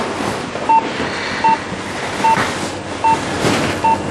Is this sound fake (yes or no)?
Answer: no